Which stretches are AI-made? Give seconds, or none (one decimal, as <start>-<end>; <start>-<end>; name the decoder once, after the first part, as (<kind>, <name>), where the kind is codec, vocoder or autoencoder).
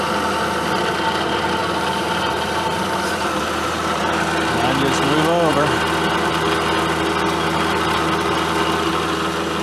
1.6-4.0 (vocoder, BigVGAN v2)